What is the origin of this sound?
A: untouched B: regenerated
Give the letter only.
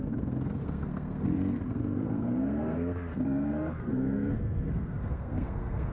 B